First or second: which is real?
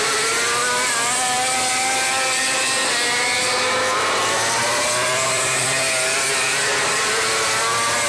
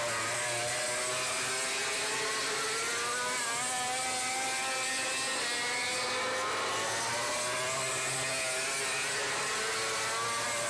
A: second